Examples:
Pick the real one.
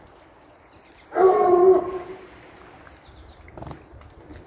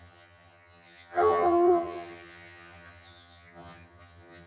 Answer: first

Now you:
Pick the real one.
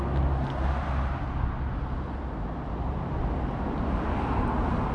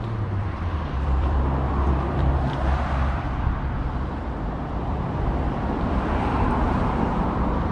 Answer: first